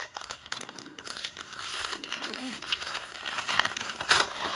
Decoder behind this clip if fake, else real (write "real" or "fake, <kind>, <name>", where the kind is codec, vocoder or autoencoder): fake, codec, SNAC